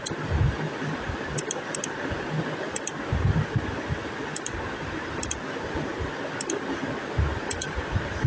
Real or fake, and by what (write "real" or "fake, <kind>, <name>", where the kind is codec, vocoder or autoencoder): real